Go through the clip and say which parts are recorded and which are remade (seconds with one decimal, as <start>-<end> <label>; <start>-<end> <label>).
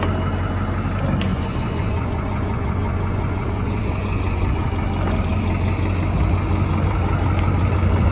0.0-1.3 recorded; 1.3-4.7 remade; 4.7-8.1 recorded